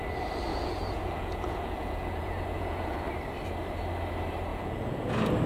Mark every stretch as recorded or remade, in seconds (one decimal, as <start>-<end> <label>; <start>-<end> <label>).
0.0-0.5 recorded; 0.5-3.1 remade; 3.1-4.5 recorded; 4.5-5.1 remade; 5.1-5.5 recorded